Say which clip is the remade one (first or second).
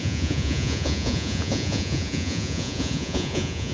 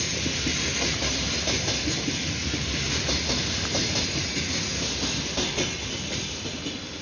first